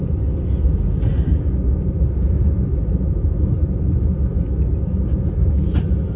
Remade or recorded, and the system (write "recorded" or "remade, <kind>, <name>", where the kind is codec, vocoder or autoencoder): recorded